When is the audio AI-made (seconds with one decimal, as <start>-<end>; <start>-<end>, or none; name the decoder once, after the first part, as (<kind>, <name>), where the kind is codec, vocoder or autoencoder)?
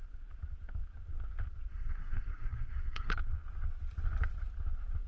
1.7-3.1 (codec, SNAC)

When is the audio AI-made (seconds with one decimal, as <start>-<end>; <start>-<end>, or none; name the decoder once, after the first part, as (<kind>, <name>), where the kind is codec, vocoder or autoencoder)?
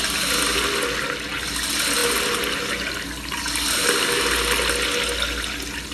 none